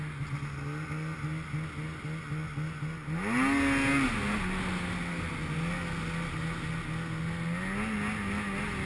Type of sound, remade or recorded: recorded